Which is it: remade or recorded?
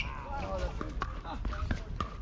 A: recorded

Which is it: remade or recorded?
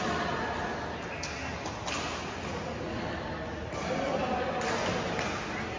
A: recorded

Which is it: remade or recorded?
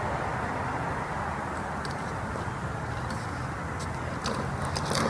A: recorded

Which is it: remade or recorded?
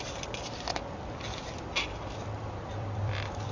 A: remade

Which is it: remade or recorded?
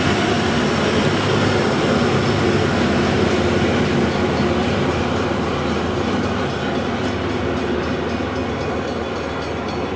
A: recorded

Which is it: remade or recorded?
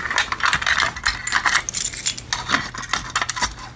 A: recorded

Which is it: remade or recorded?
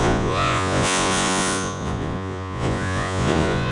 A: remade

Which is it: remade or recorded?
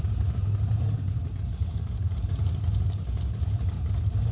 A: recorded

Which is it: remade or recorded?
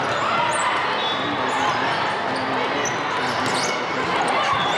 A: recorded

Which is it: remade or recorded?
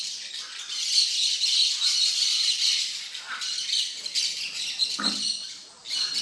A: recorded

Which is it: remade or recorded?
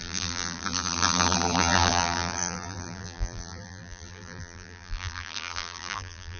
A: remade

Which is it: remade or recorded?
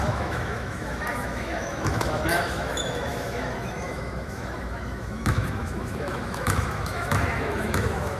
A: remade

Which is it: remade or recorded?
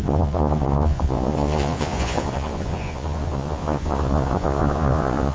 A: remade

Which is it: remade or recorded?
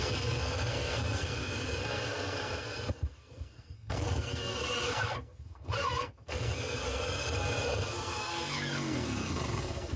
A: remade